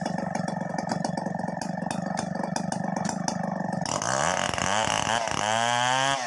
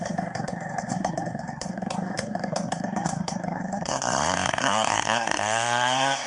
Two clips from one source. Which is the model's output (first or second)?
second